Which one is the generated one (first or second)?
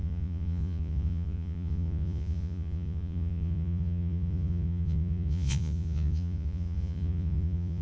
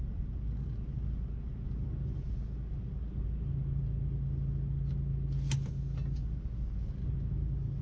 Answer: first